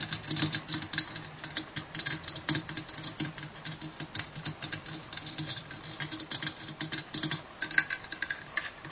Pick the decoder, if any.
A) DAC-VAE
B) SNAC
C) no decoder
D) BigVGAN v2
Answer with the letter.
C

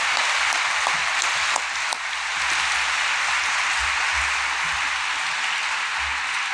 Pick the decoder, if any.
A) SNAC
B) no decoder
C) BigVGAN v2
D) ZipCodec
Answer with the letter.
B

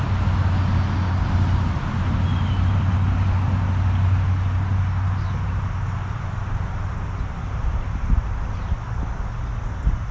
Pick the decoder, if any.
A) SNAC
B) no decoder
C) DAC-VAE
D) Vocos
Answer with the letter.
B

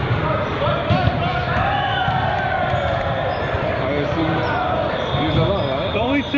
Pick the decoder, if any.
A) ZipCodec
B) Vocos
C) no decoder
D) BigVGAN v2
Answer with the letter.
C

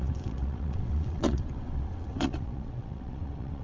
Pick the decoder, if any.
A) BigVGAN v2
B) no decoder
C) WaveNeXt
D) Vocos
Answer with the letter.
C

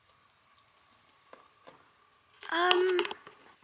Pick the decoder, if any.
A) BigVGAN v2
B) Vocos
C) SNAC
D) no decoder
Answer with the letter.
D